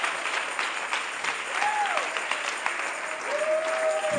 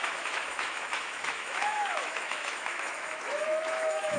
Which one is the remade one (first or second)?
second